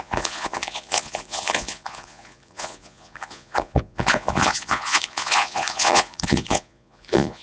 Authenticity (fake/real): fake